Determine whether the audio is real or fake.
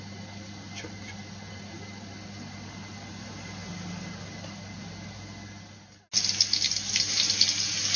real